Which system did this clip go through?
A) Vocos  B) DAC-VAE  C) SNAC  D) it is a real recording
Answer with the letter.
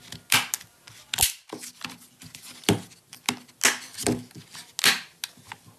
D